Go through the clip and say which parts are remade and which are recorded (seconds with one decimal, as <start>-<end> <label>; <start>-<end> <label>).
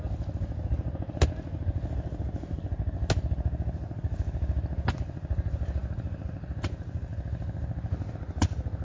0.0-8.8 recorded